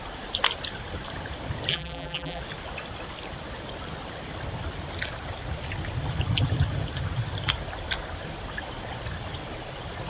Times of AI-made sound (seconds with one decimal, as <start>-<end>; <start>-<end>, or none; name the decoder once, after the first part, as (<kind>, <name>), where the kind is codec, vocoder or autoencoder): 1.7-2.4 (vocoder, BigVGAN v2)